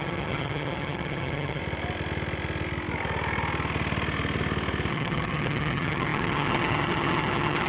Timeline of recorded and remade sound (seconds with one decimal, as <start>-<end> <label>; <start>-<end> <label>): 0.0-1.6 remade; 1.6-4.9 recorded; 4.9-7.7 remade